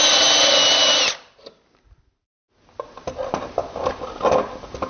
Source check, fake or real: real